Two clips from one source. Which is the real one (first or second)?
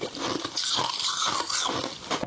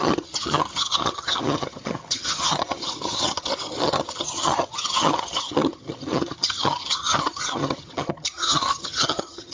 first